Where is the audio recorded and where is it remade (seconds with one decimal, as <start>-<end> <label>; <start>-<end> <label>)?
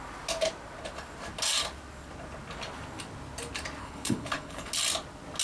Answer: 0.0-3.8 recorded; 3.8-4.7 remade; 4.7-5.4 recorded